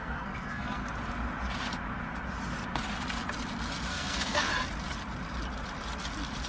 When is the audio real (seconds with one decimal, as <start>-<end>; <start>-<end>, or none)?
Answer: 0.8-3.9; 4.5-6.5